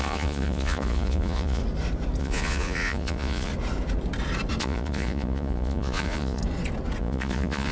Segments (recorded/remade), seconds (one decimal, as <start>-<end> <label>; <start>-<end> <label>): 0.0-1.6 remade; 1.6-2.2 recorded; 2.2-3.5 remade; 3.5-4.6 recorded; 4.6-6.4 remade; 6.4-7.0 recorded; 7.0-7.7 remade